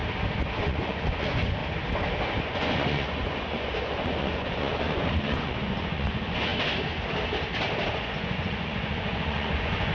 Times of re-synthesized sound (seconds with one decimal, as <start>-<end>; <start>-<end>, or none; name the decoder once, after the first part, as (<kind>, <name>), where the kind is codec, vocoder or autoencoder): 0.6-1.6 (vocoder, Vocos); 2.5-6.5; 7.9-9.9

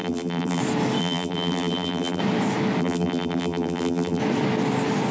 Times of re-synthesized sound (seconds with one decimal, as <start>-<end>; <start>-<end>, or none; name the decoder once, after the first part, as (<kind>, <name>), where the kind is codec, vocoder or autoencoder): 0.0-0.6 (vocoder, BigVGAN v2); 1.0-2.2; 2.8-4.2

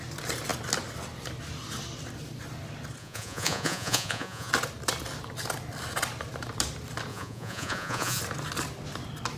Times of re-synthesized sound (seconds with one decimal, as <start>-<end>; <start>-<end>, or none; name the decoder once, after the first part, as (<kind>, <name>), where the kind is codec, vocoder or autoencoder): 3.0-4.5 (vocoder, Vocos); 7.1-8.2

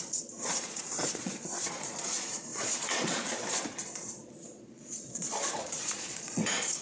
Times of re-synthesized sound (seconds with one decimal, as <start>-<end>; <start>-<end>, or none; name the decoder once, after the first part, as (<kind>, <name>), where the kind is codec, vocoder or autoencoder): 0.0-6.8 (vocoder, Vocos)